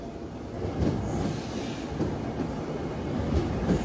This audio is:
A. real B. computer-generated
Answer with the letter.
A